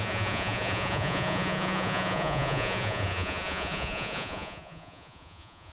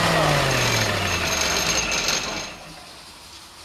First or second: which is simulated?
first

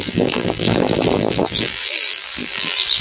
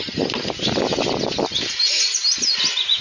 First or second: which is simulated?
first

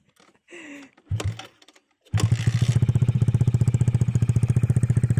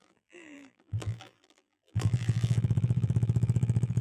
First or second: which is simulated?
second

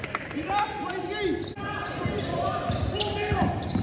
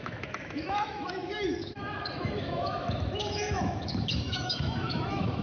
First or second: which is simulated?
second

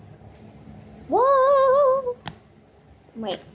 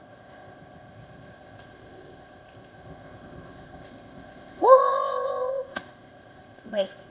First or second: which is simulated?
second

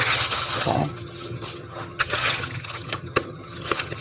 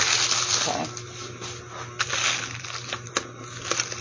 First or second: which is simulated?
first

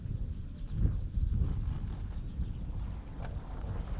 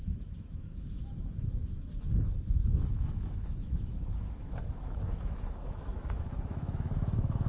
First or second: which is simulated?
second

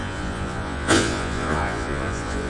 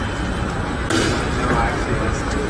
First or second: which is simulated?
first